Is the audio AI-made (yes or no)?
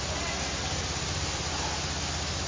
no